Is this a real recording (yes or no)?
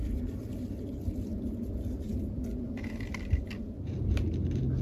yes